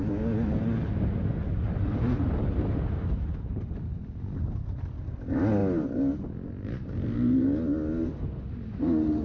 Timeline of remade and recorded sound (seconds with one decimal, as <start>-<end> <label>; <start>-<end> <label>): 0.0-9.2 recorded